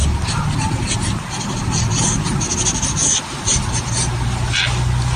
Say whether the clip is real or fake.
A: real